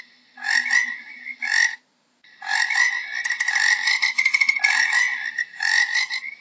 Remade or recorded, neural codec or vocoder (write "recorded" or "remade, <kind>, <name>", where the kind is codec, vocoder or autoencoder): recorded